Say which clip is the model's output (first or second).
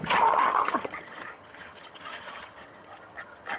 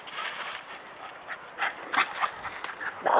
first